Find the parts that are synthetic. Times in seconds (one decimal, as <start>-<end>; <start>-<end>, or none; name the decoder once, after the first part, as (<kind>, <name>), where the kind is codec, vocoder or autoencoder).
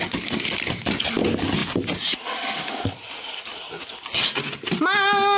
none